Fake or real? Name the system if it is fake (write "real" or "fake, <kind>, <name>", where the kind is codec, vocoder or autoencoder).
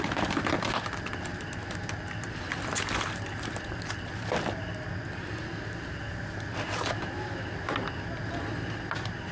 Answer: real